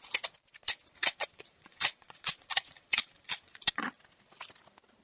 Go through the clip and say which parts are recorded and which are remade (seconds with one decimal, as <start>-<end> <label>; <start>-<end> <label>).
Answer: 0.0-1.0 recorded; 1.0-4.0 remade; 4.0-5.0 recorded